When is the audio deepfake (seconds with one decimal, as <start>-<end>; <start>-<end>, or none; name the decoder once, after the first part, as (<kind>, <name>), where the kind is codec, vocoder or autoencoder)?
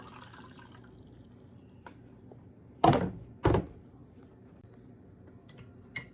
none